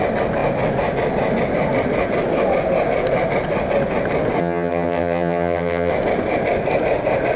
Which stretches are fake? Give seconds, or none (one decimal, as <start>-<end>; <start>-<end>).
4.4-5.9